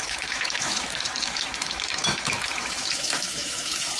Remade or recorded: remade